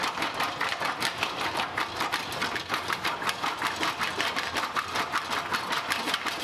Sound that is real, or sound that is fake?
fake